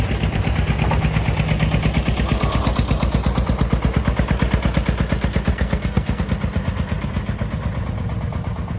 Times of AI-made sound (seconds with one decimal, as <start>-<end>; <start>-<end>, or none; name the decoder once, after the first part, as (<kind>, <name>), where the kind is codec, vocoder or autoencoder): 5.5-6.2 (codec, SNAC)